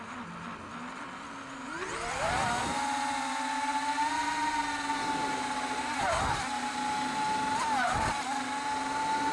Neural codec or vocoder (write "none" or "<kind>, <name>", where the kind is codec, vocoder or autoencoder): none